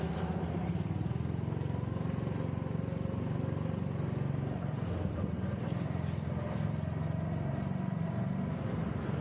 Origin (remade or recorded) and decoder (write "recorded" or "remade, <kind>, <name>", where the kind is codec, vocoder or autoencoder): recorded